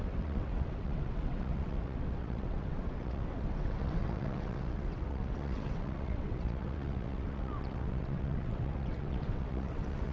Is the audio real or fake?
fake